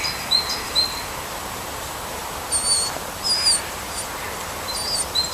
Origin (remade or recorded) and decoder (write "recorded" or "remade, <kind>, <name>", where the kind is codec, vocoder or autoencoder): recorded